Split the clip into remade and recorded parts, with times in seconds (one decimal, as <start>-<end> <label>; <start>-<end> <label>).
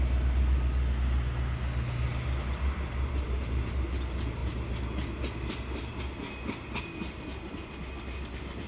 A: 0.0-8.7 recorded